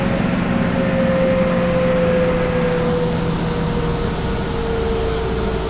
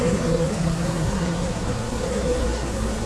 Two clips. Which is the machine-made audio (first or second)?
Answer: second